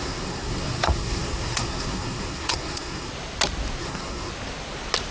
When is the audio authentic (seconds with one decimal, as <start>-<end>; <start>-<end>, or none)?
3.1-3.8; 4.3-5.1